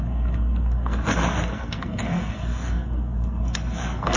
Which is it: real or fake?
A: fake